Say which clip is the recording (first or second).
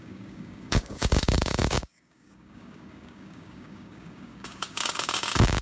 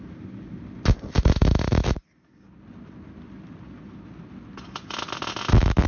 second